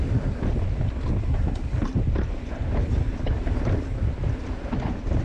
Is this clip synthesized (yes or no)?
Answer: no